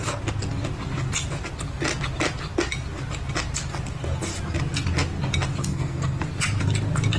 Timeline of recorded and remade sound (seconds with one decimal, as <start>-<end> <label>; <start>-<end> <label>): 0.0-5.7 recorded; 5.7-6.2 remade; 6.2-7.2 recorded